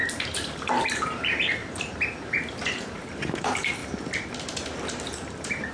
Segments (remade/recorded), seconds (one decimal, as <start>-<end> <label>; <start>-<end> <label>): 0.0-3.8 remade; 3.8-4.4 recorded; 4.4-5.7 remade